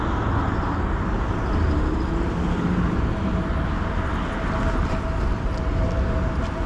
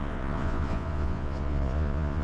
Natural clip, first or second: first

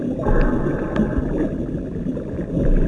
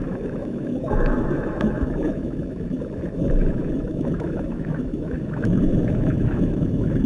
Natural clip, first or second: first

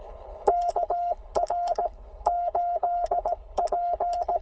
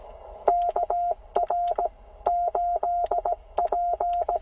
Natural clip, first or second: second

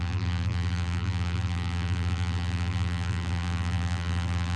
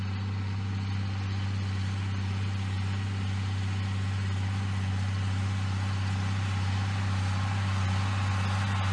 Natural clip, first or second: second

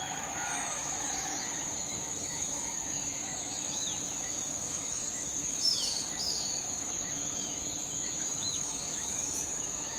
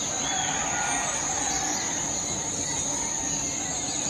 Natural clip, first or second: second